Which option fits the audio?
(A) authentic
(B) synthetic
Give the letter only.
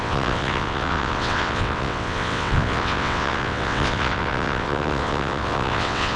B